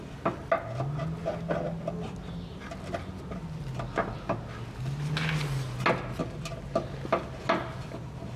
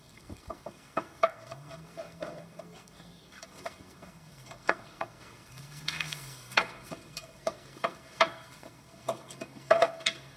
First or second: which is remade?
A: second